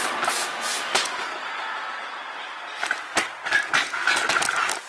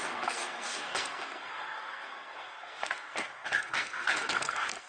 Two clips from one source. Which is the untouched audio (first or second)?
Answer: first